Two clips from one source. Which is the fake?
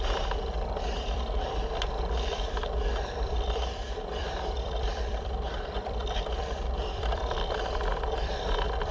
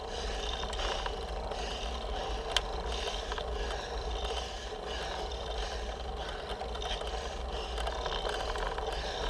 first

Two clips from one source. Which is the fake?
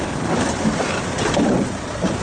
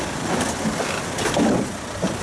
first